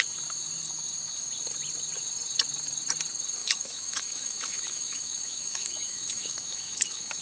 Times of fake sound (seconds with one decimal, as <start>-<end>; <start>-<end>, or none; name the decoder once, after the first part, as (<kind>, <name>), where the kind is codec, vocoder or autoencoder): 3.4-7.2 (autoencoder, DAC-VAE)